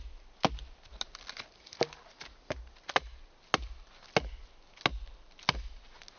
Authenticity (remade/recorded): recorded